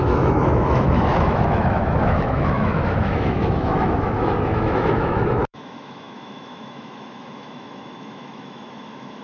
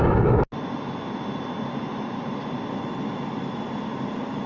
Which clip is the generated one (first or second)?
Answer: first